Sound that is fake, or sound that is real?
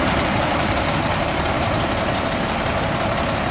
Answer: fake